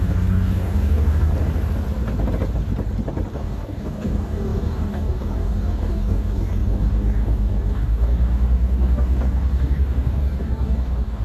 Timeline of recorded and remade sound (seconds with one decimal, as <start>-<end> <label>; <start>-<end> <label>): 0.0-1.3 remade; 1.3-3.3 recorded; 3.3-11.2 remade